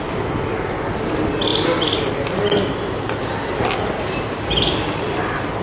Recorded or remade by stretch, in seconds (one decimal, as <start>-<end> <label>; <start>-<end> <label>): 0.0-5.6 recorded